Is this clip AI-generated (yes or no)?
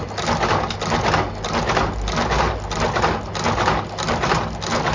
no